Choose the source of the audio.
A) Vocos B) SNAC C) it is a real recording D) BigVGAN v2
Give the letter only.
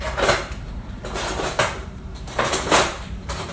D